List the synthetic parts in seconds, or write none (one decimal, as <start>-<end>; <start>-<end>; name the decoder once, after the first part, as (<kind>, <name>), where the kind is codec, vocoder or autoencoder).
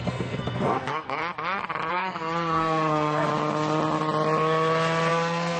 0.0-1.2 (codec, SNAC); 1.9-3.3; 5.1-5.6